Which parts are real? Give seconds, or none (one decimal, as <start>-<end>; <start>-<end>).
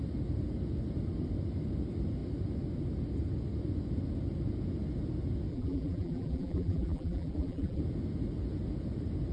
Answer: 0.0-5.5; 7.8-9.3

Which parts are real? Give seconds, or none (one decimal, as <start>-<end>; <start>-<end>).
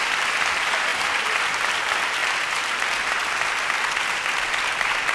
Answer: 0.9-1.8; 2.2-3.9